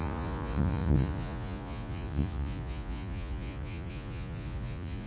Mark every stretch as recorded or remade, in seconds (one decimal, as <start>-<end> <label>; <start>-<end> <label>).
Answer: 0.0-5.1 remade

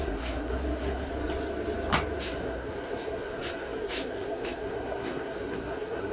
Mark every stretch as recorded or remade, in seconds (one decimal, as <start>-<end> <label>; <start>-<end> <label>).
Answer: 0.0-1.1 remade; 1.1-2.2 recorded; 2.2-6.1 remade

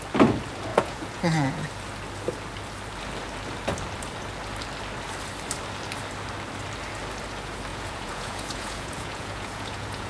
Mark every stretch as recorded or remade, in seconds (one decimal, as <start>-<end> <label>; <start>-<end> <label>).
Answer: 0.0-0.7 recorded; 0.7-1.7 remade; 1.7-7.7 recorded; 7.7-10.1 remade

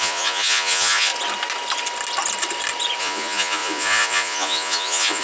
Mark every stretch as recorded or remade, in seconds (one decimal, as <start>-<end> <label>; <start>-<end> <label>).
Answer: 0.0-1.1 remade; 1.1-3.0 recorded; 3.0-5.2 remade

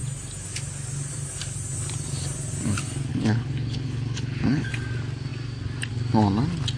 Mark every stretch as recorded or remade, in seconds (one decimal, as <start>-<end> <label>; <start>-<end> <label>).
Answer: 0.0-3.1 recorded; 3.1-4.7 remade; 4.7-6.8 recorded

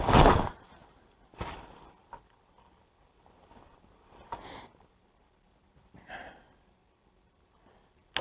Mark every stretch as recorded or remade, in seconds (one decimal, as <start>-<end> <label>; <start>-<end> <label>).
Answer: 0.0-8.2 recorded

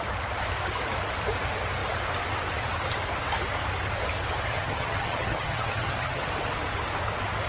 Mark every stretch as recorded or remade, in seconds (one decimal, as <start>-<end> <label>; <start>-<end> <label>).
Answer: 0.0-4.5 recorded; 4.5-6.2 remade; 6.2-7.5 recorded

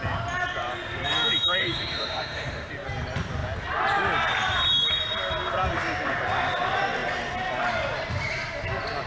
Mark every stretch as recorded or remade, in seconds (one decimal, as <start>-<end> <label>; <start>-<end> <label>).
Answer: 0.0-1.6 recorded; 1.6-2.7 remade; 2.7-9.1 recorded